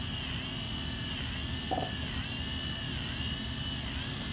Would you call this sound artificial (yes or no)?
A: no